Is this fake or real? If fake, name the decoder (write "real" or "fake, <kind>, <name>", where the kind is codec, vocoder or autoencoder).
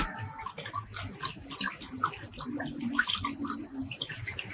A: real